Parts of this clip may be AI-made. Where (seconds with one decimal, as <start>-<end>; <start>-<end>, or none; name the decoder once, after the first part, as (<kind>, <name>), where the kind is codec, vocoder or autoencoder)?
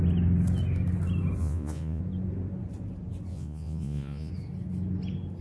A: 1.4-2.0 (vocoder, Vocos); 3.3-4.3